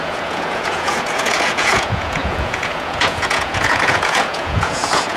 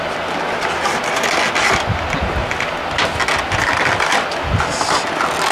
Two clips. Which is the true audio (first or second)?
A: second